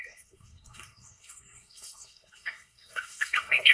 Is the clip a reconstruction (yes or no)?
yes